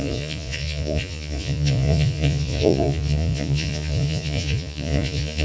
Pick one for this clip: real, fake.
fake